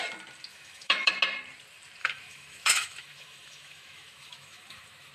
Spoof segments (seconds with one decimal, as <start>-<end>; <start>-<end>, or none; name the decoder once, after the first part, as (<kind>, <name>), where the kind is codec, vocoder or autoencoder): 0.5-1.1 (autoencoder, DAC-VAE); 2.0-5.1